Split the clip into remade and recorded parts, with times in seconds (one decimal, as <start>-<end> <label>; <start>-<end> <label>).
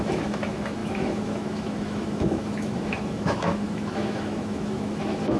0.0-5.4 remade